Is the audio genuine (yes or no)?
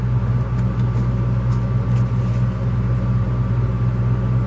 yes